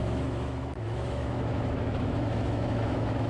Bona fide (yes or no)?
no